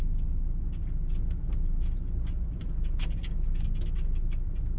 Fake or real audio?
real